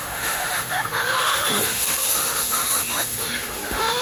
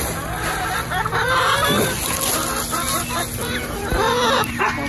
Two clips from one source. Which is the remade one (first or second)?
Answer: first